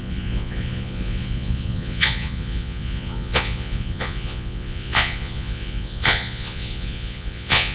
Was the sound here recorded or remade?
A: remade